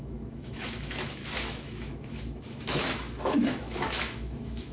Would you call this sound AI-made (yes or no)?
yes